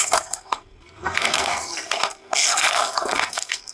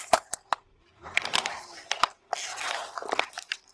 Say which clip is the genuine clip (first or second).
second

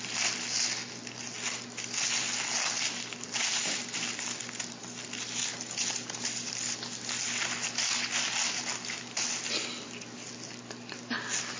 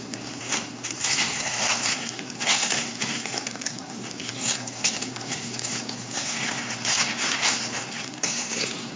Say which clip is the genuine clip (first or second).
first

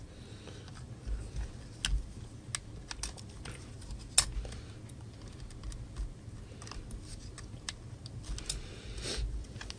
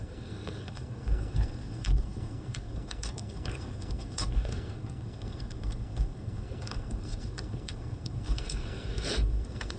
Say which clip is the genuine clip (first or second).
first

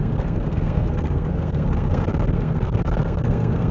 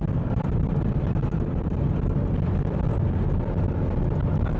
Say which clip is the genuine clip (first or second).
second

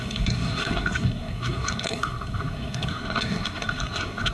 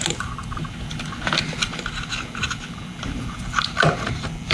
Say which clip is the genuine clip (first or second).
second